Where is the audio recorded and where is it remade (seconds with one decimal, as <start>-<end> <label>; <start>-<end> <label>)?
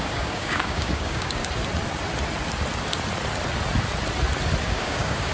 0.0-1.4 remade; 1.4-4.6 recorded; 4.6-5.3 remade